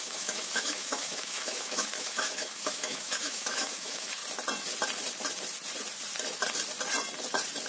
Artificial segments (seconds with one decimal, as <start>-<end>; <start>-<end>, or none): 0.0-4.2